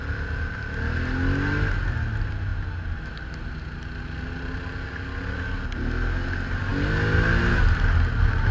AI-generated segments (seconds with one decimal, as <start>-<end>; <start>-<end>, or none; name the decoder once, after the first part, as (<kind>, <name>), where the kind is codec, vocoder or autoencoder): none